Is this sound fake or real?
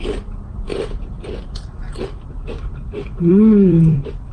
fake